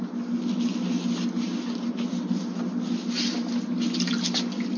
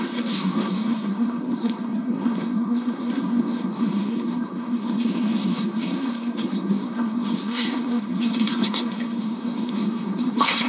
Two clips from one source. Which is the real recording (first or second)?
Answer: first